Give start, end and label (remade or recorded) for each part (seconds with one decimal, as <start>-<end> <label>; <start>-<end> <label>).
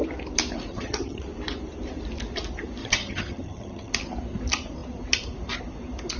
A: 0.0-0.7 recorded; 0.7-1.2 remade; 1.2-2.8 recorded; 2.8-3.9 remade; 3.9-6.2 recorded